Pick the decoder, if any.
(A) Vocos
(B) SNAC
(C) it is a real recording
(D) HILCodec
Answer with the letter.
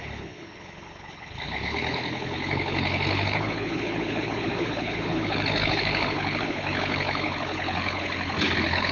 D